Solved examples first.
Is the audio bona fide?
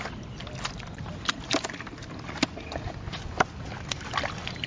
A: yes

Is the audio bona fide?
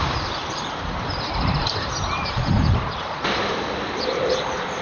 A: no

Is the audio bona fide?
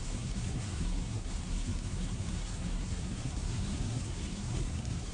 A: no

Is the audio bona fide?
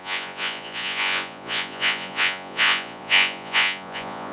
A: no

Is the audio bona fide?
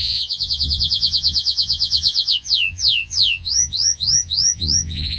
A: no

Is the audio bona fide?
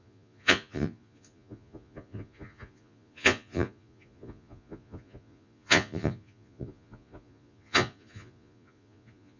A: no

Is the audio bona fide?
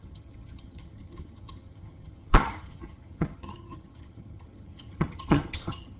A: no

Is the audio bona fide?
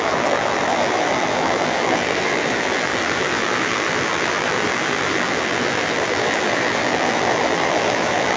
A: no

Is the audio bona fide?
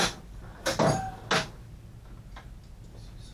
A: yes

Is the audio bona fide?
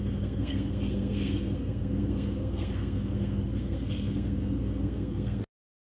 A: no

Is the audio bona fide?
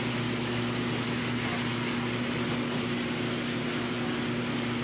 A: yes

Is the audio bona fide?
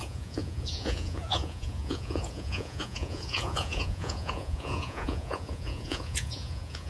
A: no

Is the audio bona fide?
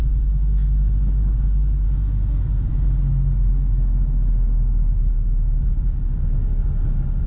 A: yes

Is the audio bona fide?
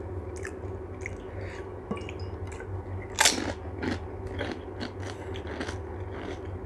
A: yes